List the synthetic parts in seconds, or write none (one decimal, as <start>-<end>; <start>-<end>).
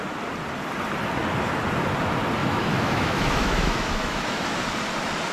2.4-4.7